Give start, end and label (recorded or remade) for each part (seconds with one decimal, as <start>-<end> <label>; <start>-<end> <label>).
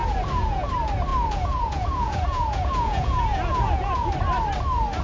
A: 0.0-0.7 remade; 0.7-1.1 recorded; 1.1-4.1 remade; 4.1-5.0 recorded